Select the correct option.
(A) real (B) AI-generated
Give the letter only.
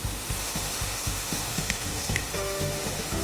B